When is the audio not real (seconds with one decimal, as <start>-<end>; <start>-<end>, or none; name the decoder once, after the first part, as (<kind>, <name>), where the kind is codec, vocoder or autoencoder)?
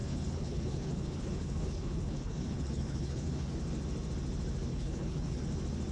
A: 0.0-3.5 (codec, HILCodec); 4.7-5.4